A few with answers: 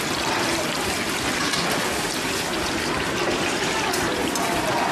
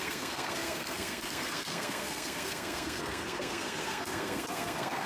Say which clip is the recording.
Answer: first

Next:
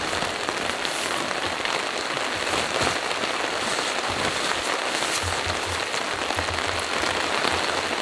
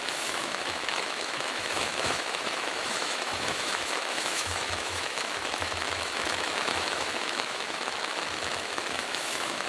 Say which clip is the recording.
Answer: first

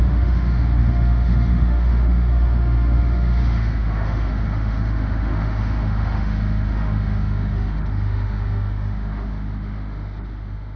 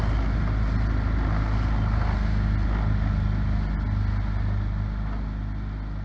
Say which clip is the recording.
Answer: second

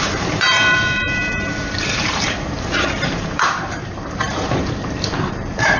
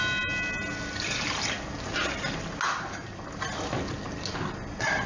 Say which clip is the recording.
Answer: second